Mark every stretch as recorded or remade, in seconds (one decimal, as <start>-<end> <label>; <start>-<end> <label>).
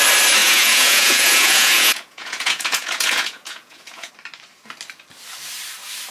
0.0-0.4 recorded; 0.4-4.1 remade; 4.1-6.1 recorded